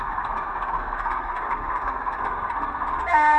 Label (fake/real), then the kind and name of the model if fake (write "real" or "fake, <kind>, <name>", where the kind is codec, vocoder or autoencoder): fake, codec, SNAC